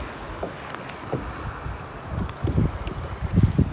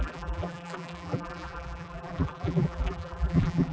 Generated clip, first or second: second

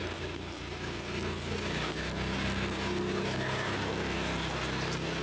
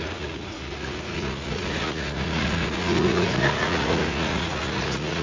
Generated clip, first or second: second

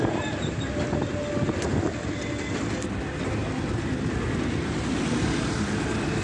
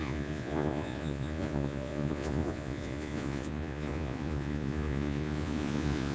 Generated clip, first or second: second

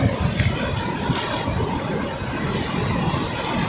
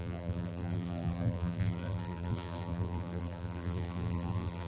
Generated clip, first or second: second